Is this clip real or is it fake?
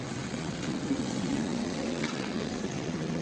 fake